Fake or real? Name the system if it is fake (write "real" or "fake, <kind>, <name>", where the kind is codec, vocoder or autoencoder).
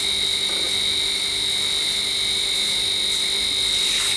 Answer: real